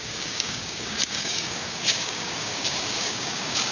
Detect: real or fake fake